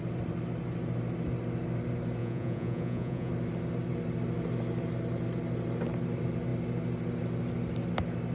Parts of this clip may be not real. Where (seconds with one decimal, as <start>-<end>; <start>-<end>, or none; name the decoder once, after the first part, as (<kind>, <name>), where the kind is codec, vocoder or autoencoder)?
2.2-3.3 (vocoder, Vocos)